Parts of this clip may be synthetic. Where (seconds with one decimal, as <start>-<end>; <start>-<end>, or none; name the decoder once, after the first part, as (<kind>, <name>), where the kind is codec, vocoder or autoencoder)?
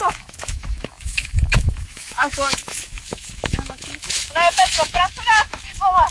0.0-6.1 (autoencoder, DAC-VAE)